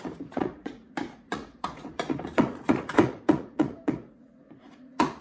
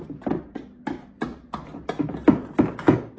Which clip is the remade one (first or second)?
first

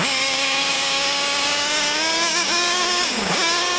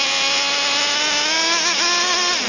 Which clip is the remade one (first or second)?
first